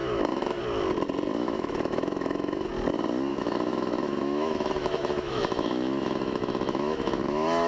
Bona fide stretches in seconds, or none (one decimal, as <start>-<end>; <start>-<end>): 0.6-1.4; 2.7-3.3